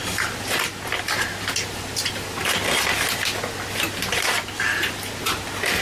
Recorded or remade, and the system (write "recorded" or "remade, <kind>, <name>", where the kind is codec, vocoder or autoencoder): recorded